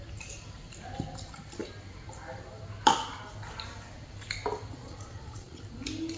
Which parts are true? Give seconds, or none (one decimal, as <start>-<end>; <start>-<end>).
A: 0.0-4.8; 5.6-6.2